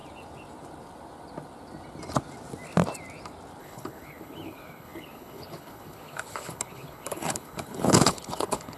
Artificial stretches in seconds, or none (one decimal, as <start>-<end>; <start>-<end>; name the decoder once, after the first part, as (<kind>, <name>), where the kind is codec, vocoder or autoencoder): 3.6-8.8 (codec, HILCodec)